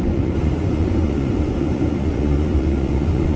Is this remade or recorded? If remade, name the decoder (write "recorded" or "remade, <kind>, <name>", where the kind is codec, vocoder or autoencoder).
remade, vocoder, Vocos